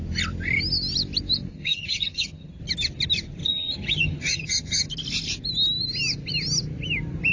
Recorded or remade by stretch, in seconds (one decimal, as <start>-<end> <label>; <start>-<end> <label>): 0.0-1.5 recorded; 1.5-2.6 remade; 2.6-3.4 recorded; 3.4-4.9 remade; 4.9-7.3 recorded